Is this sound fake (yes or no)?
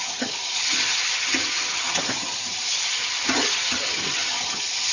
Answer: yes